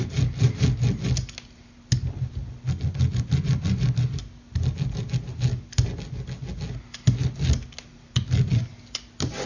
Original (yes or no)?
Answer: yes